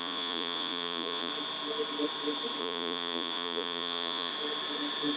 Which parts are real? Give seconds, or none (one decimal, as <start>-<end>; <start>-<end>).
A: 1.3-2.6; 4.3-5.2